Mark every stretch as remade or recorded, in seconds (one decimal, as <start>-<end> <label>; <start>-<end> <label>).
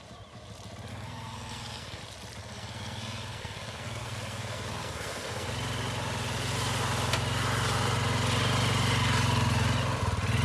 0.0-0.9 recorded; 0.9-2.0 remade; 2.0-2.4 recorded; 2.4-5.5 remade; 5.5-10.4 recorded